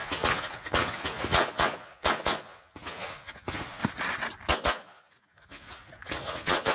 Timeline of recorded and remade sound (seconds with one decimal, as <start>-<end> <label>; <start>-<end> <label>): 0.0-3.8 remade; 3.8-4.5 recorded; 4.5-6.7 remade